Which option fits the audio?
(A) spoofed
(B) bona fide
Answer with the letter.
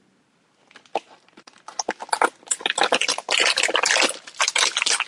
B